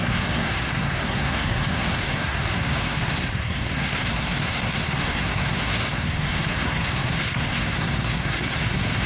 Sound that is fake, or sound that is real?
fake